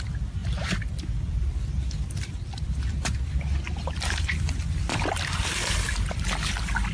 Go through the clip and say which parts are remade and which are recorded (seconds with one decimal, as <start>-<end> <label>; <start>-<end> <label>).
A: 0.0-0.4 recorded; 0.4-4.5 remade; 4.5-4.9 recorded; 4.9-6.2 remade; 6.2-6.9 recorded